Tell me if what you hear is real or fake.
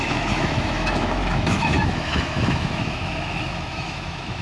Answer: fake